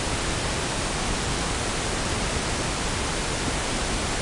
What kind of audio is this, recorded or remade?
recorded